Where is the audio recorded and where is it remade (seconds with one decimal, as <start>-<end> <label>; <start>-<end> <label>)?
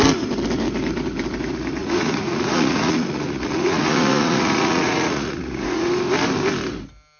0.0-1.8 recorded; 1.8-5.9 remade; 5.9-7.2 recorded